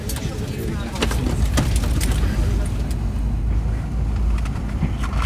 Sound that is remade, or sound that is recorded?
recorded